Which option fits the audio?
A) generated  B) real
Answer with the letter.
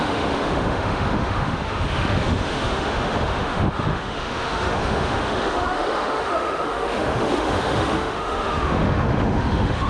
A